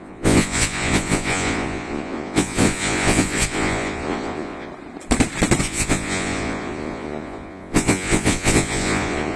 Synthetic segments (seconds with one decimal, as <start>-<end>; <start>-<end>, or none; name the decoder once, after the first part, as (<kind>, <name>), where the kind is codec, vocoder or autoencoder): 0.0-4.7 (vocoder, Vocos); 5.6-9.4